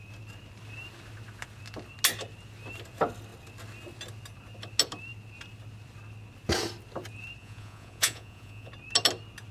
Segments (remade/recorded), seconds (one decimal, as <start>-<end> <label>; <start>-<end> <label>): 0.0-7.4 recorded; 7.4-8.7 remade; 8.7-9.5 recorded